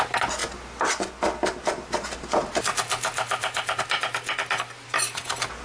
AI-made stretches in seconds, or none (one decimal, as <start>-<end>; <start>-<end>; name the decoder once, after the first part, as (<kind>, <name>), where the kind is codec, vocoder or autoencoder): none